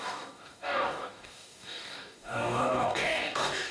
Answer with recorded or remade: remade